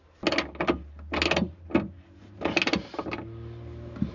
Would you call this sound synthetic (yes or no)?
no